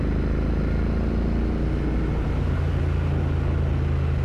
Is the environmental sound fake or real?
real